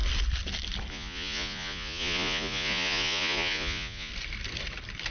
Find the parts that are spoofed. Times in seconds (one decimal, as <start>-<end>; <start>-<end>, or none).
0.9-4.1

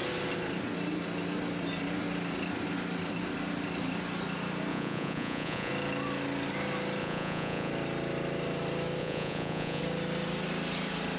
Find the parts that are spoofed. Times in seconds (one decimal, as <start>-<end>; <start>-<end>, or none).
4.7-5.7; 7.0-7.7; 9.0-9.8

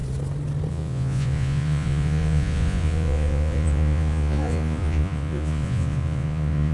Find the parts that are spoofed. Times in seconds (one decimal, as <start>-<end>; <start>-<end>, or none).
0.7-6.7

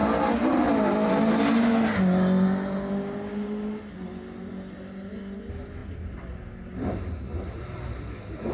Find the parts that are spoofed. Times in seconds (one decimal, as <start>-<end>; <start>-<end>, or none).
none